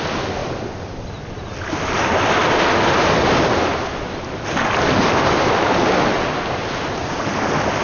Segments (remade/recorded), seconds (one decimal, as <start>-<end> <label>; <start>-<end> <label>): 0.0-7.8 recorded